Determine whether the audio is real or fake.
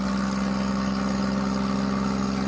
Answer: real